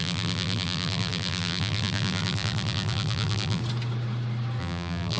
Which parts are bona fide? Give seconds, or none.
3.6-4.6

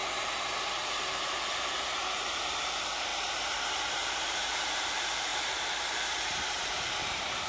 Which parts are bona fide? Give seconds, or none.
0.0-1.5

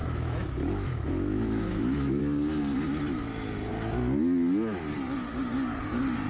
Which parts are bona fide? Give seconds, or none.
2.2-6.3

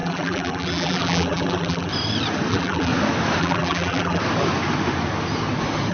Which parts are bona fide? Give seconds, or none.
1.9-2.5; 2.9-3.4; 4.2-5.9

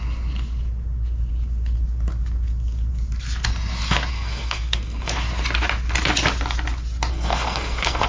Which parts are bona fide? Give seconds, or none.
0.0-4.1; 5.1-7.1

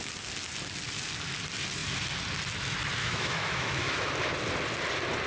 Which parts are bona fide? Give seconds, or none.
0.0-3.0; 4.1-5.3

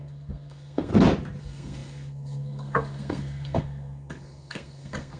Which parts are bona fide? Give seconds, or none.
0.9-1.4